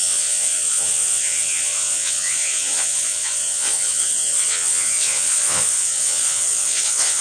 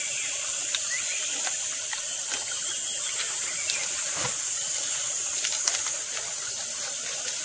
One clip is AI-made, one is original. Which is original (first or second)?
second